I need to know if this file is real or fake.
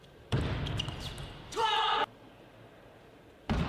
fake